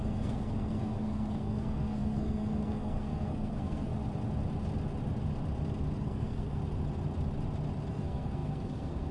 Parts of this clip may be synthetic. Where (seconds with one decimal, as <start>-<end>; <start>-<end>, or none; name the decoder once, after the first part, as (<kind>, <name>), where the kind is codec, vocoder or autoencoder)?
0.0-3.9 (codec, SNAC); 6.0-6.6; 7.9-9.1